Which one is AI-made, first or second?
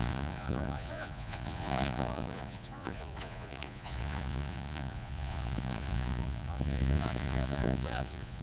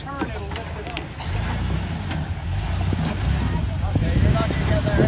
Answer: first